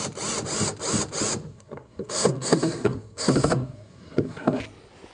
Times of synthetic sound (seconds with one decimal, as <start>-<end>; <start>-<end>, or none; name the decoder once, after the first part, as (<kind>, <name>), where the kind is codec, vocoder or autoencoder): 1.5-4.6 (codec, SNAC)